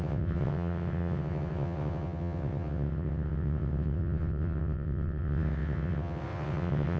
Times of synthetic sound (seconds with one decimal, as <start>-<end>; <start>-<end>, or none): 0.0-7.0